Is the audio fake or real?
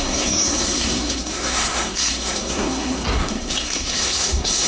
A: fake